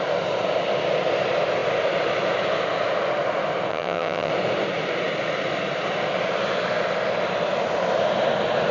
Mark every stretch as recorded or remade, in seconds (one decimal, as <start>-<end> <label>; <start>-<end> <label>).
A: 0.0-3.7 recorded; 3.7-4.3 remade; 4.3-8.7 recorded